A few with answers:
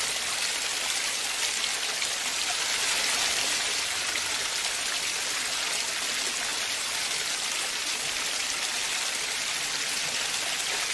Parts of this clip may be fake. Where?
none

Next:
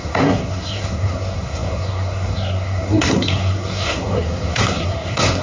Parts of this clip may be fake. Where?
0.0-5.4 (codec, SNAC)

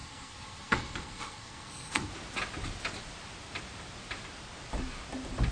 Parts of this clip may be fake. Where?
0.0-2.1 (codec, SNAC)

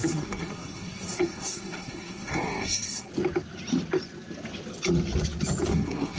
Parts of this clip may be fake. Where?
0.0-3.1 (codec, SNAC); 5.7-6.2